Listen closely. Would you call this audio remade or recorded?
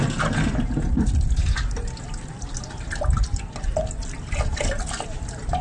recorded